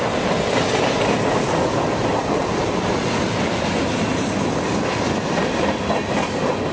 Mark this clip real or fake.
real